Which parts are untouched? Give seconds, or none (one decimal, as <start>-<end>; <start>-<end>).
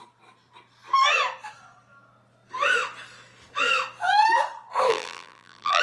0.0-4.9